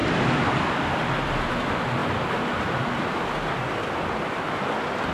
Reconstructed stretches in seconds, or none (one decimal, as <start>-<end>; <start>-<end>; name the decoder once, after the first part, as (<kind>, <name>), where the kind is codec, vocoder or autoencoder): none